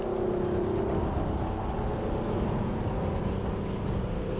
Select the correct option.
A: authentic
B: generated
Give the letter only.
A